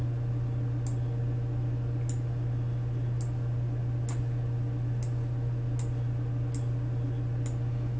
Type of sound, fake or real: real